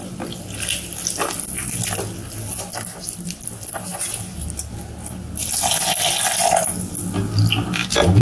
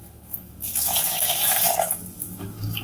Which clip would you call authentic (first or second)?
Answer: first